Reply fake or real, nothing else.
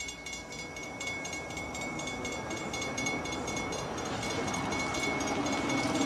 fake